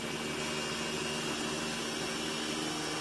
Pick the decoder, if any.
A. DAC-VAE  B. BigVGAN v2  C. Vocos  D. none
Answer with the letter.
D